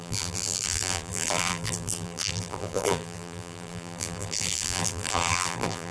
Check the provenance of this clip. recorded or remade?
remade